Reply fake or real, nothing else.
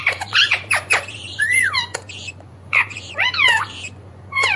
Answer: fake